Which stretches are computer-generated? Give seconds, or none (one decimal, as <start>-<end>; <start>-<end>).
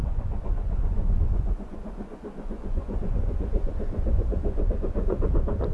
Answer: 0.0-5.7